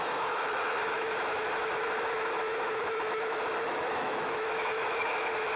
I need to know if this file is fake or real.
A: fake